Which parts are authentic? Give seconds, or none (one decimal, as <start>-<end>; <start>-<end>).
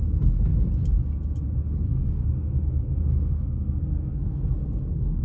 0.0-1.9